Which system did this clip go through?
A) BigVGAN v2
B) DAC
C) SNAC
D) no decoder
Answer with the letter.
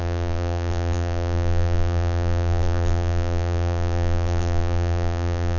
A